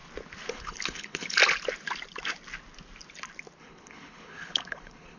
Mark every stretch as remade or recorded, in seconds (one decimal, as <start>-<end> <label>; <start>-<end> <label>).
0.0-0.5 recorded; 0.5-1.4 remade; 1.4-3.6 recorded; 3.6-5.2 remade